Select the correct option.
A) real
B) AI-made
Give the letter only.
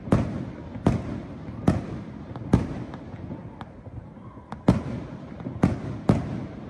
A